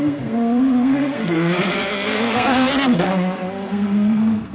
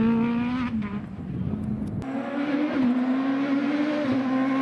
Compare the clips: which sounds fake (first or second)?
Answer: first